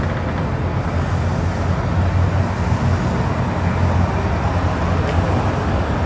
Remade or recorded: recorded